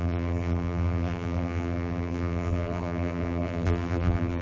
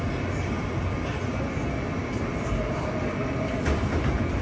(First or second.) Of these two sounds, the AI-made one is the first